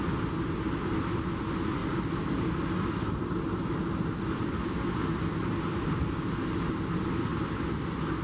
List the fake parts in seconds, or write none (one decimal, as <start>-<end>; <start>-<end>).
none